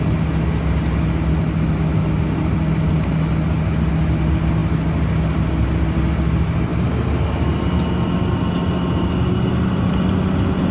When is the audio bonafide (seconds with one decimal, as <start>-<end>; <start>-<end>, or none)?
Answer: 0.0-10.7